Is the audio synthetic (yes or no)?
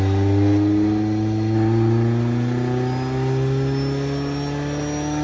no